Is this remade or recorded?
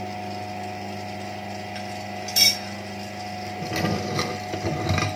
recorded